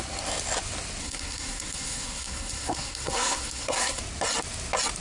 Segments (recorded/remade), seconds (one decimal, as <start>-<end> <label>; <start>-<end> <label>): 0.0-1.0 recorded; 1.0-4.0 remade; 4.0-5.0 recorded